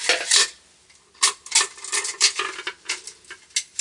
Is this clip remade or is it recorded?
recorded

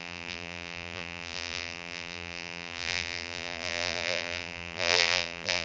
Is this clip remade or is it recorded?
remade